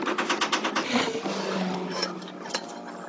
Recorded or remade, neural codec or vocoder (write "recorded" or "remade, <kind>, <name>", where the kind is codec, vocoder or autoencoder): recorded